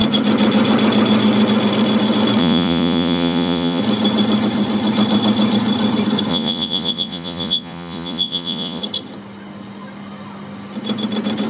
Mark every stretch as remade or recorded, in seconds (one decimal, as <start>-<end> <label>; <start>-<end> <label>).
0.0-2.4 recorded; 2.4-3.8 remade; 3.8-6.3 recorded; 6.3-8.8 remade; 8.8-11.5 recorded